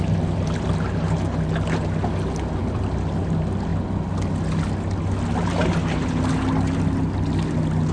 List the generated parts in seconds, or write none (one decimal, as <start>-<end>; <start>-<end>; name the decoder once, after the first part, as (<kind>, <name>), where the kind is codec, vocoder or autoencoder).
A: 2.6-3.2 (vocoder, BigVGAN v2)